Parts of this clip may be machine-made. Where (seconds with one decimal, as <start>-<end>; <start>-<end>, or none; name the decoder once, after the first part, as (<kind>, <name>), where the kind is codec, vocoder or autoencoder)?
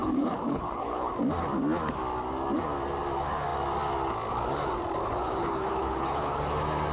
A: 0.0-1.1 (codec, HILCodec); 5.0-6.4